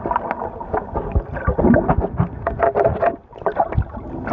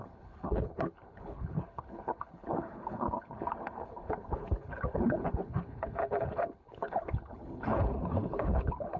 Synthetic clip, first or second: second